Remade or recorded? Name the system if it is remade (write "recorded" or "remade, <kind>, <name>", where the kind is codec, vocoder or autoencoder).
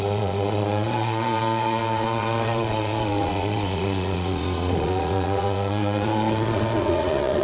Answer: remade, vocoder, Vocos